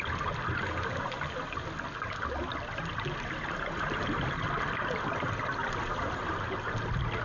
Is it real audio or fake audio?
real